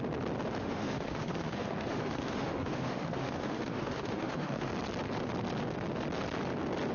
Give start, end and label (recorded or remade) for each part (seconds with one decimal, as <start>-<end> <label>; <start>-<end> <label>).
0.0-0.6 recorded; 0.6-4.7 remade; 4.7-6.9 recorded